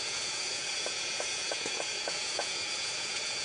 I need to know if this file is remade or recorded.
remade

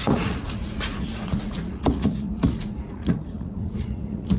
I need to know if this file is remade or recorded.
remade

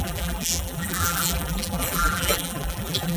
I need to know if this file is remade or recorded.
remade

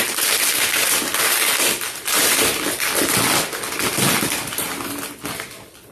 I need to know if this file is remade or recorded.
remade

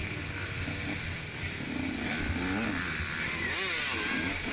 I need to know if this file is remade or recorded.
recorded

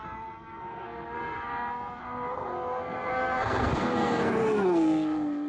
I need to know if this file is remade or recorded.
remade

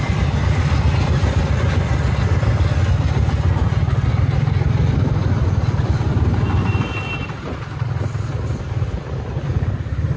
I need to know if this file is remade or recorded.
recorded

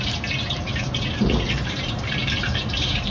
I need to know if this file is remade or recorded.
remade